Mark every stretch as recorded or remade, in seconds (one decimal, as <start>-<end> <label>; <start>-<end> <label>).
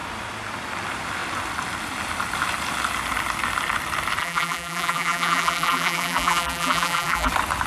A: 0.0-4.2 recorded; 4.2-7.3 remade; 7.3-7.7 recorded